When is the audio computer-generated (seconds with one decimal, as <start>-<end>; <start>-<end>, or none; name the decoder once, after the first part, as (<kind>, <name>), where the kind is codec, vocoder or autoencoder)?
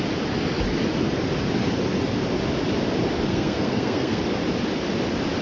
3.3-4.2 (codec, SNAC)